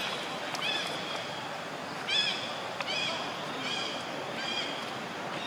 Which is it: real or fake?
real